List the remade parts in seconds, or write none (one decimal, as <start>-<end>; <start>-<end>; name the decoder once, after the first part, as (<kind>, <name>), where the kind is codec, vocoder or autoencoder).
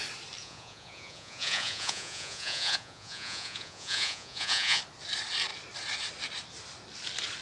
0.4-4.8 (vocoder, Vocos)